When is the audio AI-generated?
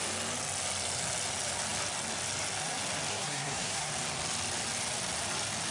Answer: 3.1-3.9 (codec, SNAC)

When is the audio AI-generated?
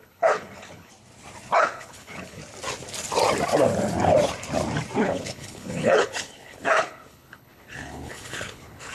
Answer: 0.0-0.9 (codec, HILCodec); 1.6-2.4; 5.0-8.9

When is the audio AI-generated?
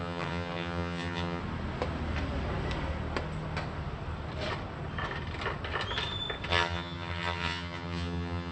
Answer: 0.0-1.4 (vocoder, HiFi-GAN); 6.5-8.5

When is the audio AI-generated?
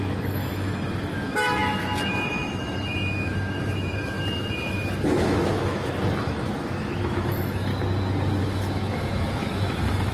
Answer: 0.0-7.7 (autoencoder, DAC-VAE); 8.4-10.1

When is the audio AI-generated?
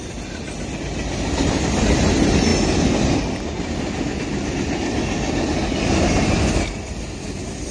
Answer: none